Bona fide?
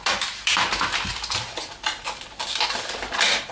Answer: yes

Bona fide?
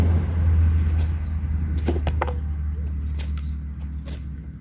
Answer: yes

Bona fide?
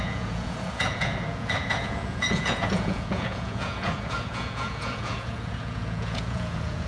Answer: no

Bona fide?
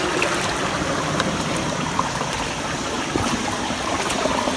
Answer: no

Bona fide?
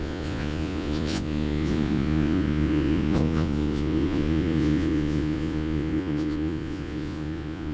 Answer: no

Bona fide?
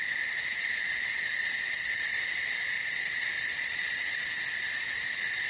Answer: yes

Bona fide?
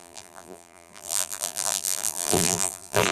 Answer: no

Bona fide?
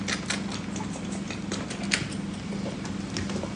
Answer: yes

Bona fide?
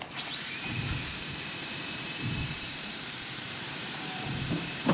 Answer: no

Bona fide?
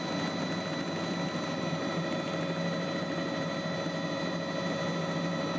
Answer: yes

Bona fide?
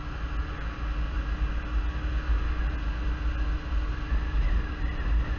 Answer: yes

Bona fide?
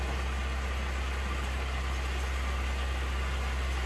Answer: yes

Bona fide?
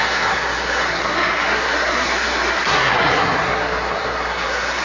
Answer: no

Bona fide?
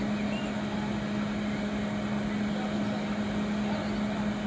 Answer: yes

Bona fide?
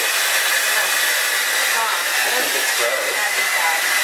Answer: yes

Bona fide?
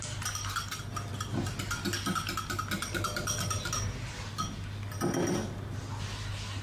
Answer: yes